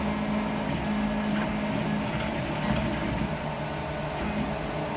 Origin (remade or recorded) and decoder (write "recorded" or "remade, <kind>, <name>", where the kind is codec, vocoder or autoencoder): recorded